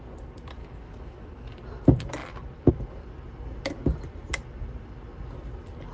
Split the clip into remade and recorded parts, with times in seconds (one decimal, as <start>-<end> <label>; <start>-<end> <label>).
0.0-0.6 recorded; 0.6-1.5 remade; 1.5-5.9 recorded